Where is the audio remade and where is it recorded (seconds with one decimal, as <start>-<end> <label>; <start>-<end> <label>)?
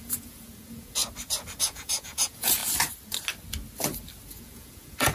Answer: 0.0-1.0 remade; 1.0-1.6 recorded; 1.6-2.6 remade; 2.6-4.3 recorded; 4.3-5.1 remade